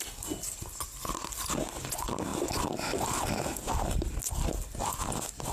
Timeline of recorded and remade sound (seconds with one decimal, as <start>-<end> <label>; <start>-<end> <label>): 0.0-5.5 recorded